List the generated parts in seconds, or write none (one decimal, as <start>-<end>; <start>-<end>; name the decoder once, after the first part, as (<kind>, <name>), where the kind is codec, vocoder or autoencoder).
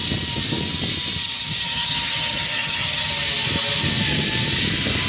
1.2-3.1 (vocoder, HiFi-GAN)